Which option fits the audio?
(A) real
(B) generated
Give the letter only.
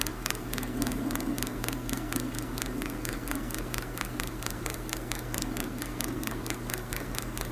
B